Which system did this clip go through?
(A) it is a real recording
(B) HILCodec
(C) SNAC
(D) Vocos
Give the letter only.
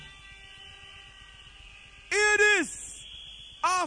A